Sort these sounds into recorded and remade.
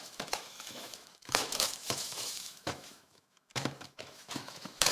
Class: remade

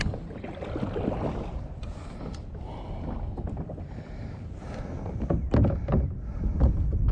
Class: recorded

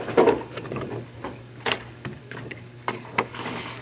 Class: remade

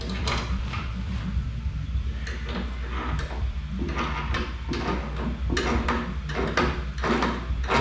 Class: recorded